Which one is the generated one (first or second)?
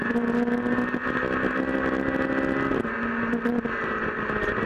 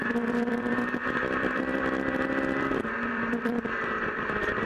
second